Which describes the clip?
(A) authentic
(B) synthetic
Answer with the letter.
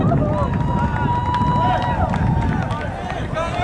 A